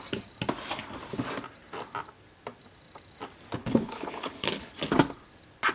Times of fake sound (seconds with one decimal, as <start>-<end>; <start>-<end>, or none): 3.6-4.7